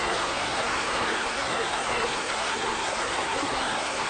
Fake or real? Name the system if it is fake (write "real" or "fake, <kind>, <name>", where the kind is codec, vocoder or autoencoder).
fake, codec, SNAC